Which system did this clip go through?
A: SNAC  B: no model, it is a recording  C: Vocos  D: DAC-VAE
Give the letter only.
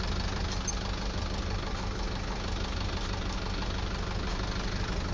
B